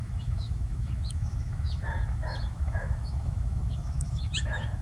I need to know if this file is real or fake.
fake